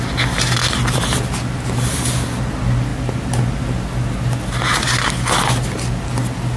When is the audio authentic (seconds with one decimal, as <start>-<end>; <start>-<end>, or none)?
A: 0.0-6.6

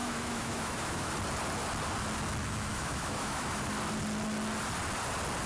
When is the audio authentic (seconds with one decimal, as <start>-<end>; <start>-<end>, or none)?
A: 1.1-2.4; 3.7-5.5

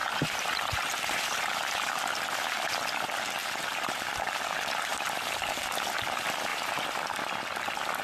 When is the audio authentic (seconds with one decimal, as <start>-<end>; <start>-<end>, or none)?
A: 2.0-3.4; 4.3-4.9; 5.9-6.5; 7.1-8.0

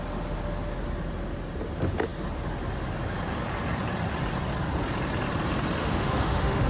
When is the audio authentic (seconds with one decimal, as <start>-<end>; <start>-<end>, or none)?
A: 0.0-5.8

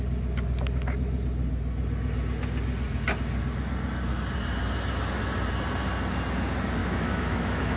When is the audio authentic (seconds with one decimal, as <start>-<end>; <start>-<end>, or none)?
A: 0.0-6.8

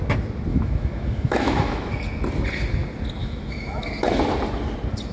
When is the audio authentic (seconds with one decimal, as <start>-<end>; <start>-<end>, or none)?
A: 0.0-0.5; 1.9-3.2; 3.9-5.1

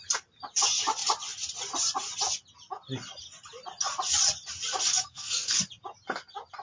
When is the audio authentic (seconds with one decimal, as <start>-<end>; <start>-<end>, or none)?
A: 0.0-4.9; 5.6-6.6